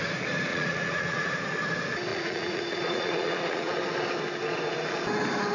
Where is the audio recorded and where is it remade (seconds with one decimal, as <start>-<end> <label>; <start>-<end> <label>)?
0.0-0.5 recorded; 0.5-1.3 remade; 1.3-2.1 recorded; 2.1-3.7 remade; 3.7-5.5 recorded